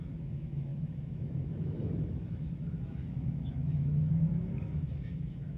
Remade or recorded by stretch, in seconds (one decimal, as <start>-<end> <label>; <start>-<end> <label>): 0.0-5.6 remade

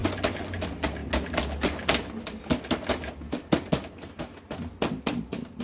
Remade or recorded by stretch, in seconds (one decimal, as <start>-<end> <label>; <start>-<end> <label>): 0.0-5.6 recorded

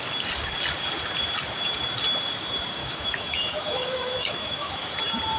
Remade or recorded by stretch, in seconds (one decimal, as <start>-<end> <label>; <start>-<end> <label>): 0.0-2.8 recorded; 2.8-5.0 remade; 5.0-5.4 recorded

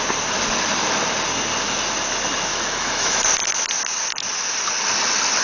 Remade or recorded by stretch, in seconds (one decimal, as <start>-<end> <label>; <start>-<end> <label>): 0.0-2.5 recorded; 2.5-3.2 remade; 3.2-5.4 recorded

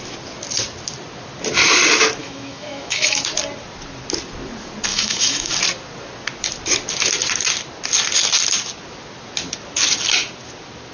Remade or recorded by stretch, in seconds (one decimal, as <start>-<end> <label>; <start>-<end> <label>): 0.0-2.2 recorded; 2.2-3.2 remade; 3.2-4.9 recorded; 4.9-5.5 remade; 5.5-10.9 recorded